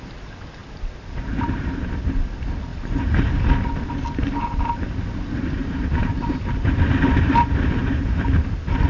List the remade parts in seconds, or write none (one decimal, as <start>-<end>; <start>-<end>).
0.6-1.8; 2.7-3.3; 5.6-8.3